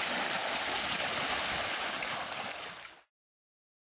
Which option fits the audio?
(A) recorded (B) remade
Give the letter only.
A